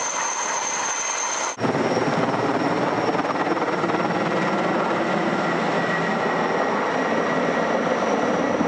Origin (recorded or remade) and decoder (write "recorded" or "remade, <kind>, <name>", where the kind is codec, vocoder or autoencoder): recorded